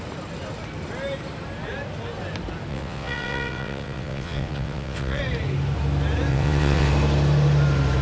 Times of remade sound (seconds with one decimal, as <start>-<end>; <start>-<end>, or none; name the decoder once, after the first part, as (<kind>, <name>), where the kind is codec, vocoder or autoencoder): 2.7-5.2 (vocoder, WaveNeXt); 6.3-6.9